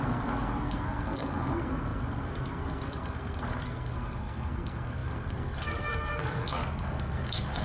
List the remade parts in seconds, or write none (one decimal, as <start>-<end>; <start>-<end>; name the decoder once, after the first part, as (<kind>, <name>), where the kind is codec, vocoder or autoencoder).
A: 0.0-7.6 (codec, SNAC)